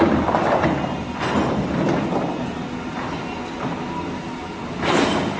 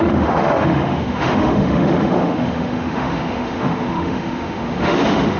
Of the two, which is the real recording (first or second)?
first